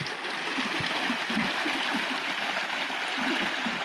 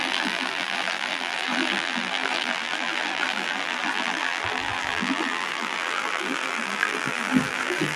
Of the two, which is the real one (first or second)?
first